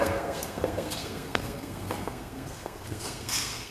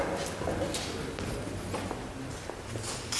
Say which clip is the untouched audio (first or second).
second